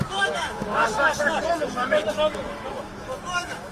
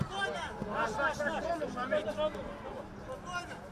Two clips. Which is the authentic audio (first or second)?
second